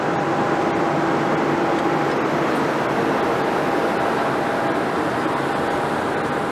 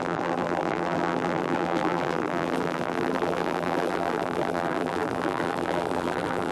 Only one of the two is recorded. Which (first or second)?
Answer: first